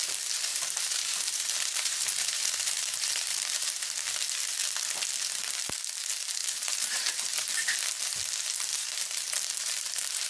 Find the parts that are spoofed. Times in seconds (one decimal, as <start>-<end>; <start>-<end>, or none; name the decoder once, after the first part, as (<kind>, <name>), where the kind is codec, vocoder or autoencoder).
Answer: 0.5-3.7 (vocoder, BigVGAN v2); 6.4-7.9; 8.7-10.3